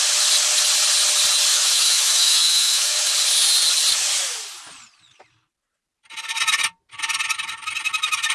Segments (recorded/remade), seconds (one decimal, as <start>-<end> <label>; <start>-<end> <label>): 0.0-1.5 recorded; 1.5-3.1 remade; 3.1-8.3 recorded